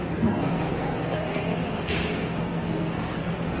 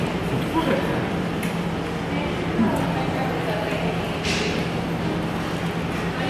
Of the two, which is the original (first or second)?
second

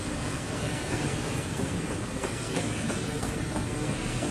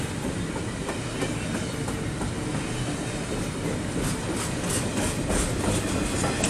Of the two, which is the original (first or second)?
second